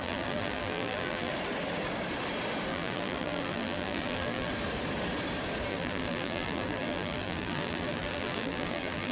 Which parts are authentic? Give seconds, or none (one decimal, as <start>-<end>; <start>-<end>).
1.3-2.7; 4.5-5.7